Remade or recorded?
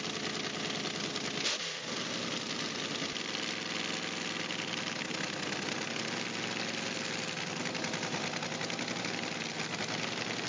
recorded